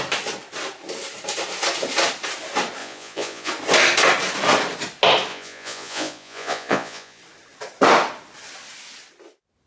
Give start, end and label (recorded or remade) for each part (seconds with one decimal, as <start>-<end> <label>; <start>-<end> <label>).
0.0-2.8 recorded; 2.8-3.5 remade; 3.5-5.3 recorded; 5.3-7.2 remade; 7.2-9.7 recorded